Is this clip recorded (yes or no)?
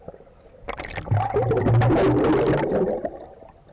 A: yes